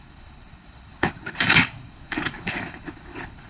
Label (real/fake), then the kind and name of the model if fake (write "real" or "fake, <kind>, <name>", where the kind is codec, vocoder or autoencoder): fake, codec, HILCodec